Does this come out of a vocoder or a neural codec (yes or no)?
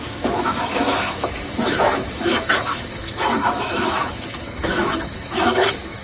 yes